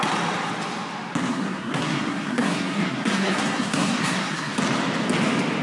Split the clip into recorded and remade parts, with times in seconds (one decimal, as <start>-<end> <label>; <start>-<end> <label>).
0.0-1.3 recorded; 1.3-4.5 remade; 4.5-5.6 recorded